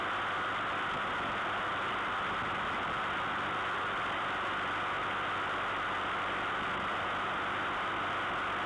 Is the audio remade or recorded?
recorded